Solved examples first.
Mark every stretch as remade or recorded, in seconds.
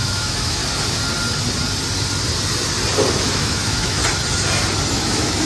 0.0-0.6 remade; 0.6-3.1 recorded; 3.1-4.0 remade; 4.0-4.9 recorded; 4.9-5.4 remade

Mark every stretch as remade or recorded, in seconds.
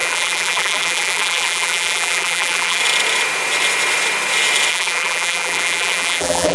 0.0-2.8 remade; 2.8-4.7 recorded; 4.7-6.5 remade